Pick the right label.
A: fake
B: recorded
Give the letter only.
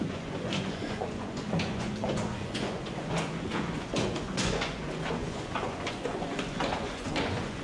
A